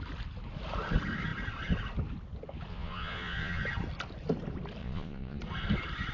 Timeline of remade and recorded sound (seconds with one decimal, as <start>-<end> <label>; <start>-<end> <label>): 0.0-2.7 recorded; 2.7-3.6 remade; 3.6-4.8 recorded; 4.8-5.4 remade; 5.4-6.1 recorded